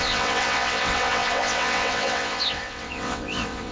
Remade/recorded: remade